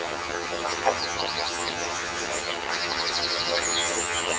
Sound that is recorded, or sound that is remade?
remade